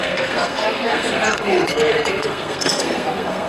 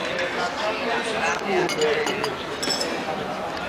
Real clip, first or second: second